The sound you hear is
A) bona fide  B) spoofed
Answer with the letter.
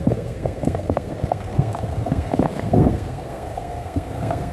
B